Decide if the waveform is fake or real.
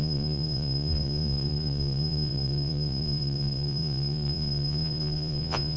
fake